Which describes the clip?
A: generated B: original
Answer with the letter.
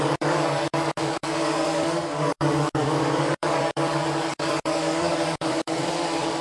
A